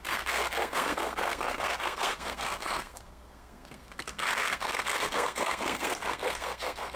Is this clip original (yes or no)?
no